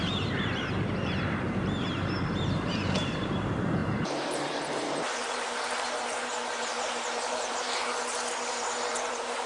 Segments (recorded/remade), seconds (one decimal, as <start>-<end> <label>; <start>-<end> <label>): 0.0-7.8 remade; 7.8-8.5 recorded; 8.5-9.5 remade